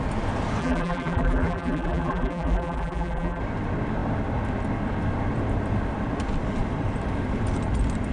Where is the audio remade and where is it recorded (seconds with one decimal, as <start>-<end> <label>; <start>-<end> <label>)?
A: 0.0-0.6 recorded; 0.6-3.4 remade; 3.4-8.1 recorded